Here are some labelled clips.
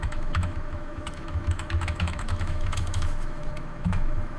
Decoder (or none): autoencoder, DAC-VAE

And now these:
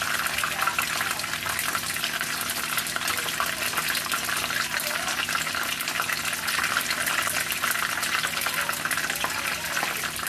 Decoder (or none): none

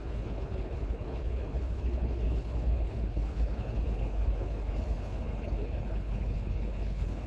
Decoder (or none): codec, HILCodec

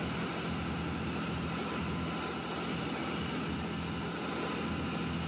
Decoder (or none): none